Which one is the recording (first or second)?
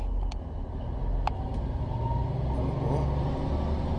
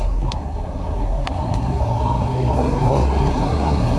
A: first